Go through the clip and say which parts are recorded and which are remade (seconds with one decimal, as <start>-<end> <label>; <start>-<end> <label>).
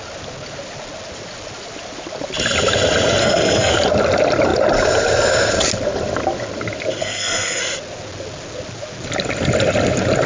0.0-3.2 recorded; 3.2-3.7 remade; 3.7-7.0 recorded; 7.0-7.6 remade; 7.6-10.3 recorded